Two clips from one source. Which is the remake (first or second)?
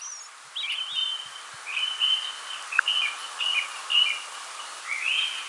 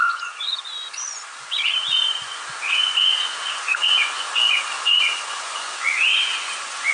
second